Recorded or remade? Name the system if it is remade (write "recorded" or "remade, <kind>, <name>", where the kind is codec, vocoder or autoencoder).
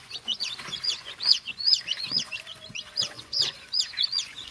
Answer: remade, vocoder, Vocos